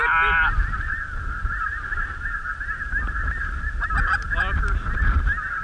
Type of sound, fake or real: real